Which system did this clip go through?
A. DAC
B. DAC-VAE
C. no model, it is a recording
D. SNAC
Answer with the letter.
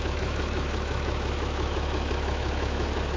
B